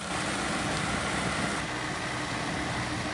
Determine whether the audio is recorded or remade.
remade